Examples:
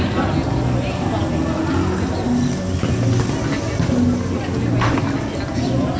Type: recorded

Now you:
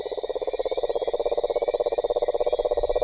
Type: recorded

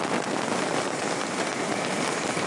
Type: recorded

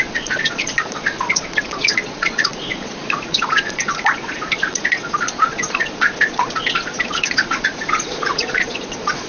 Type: remade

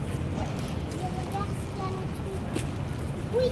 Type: recorded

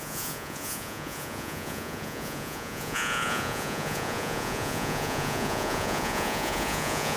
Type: remade